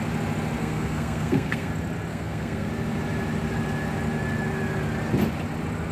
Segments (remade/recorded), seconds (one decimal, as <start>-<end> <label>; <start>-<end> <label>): 0.0-0.6 recorded; 0.6-1.7 remade; 1.7-2.1 recorded; 2.1-2.7 remade; 2.7-5.9 recorded